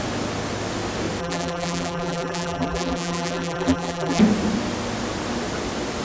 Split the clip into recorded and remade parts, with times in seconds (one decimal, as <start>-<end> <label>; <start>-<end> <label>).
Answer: 0.0-1.2 recorded; 1.2-4.2 remade; 4.2-6.0 recorded